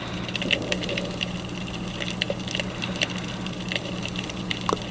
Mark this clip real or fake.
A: real